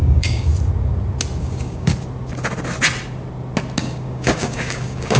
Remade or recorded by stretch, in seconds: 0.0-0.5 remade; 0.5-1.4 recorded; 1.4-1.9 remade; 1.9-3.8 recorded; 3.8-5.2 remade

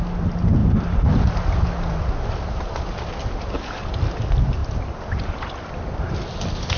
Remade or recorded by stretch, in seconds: 0.0-6.8 recorded

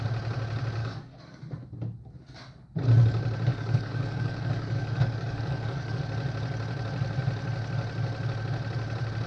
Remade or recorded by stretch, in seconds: 0.0-0.8 recorded; 0.8-1.4 remade; 1.4-3.5 recorded; 3.5-6.0 remade; 6.0-9.3 recorded

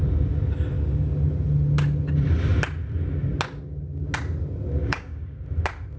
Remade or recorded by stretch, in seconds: 0.0-4.8 recorded; 4.8-5.4 remade; 5.4-6.0 recorded

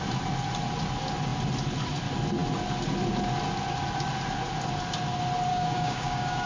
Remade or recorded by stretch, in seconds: 0.0-5.5 recorded; 5.5-6.5 remade